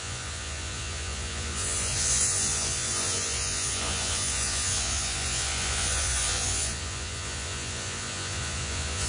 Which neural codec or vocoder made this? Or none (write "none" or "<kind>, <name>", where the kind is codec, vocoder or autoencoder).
vocoder, Vocos